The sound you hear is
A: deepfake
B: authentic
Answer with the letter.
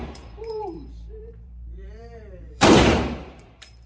A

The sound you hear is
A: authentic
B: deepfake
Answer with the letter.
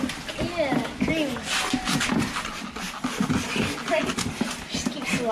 A